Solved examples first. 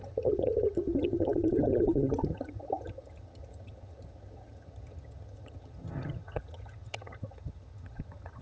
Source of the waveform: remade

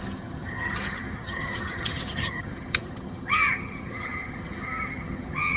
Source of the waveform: remade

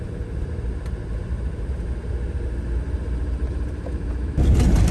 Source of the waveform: remade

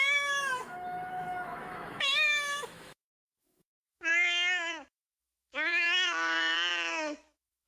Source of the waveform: remade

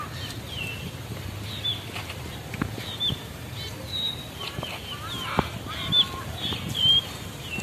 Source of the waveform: recorded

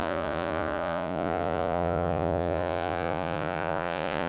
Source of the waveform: remade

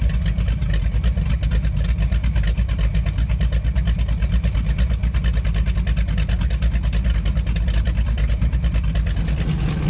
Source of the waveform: recorded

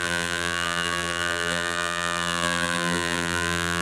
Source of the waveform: remade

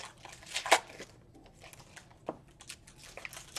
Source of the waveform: recorded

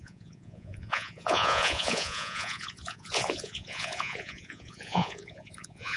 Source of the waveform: remade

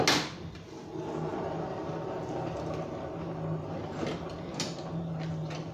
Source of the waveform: recorded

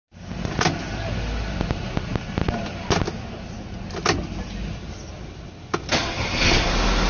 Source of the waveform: recorded